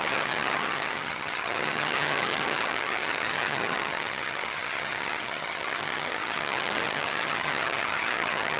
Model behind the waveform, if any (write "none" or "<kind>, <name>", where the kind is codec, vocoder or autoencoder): vocoder, HiFi-GAN